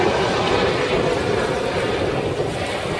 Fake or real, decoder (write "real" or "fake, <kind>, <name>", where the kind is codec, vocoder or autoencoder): real